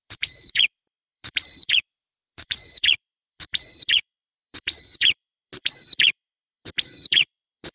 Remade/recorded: remade